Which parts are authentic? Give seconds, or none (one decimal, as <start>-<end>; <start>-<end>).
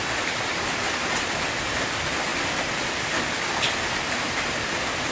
0.6-5.1